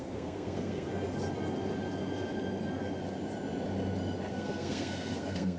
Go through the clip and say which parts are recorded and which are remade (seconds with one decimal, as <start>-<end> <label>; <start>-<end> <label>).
0.0-0.9 remade; 0.9-4.3 recorded; 4.3-5.6 remade